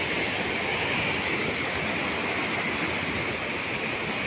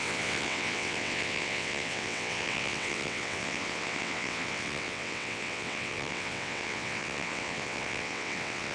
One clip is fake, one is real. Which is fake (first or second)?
second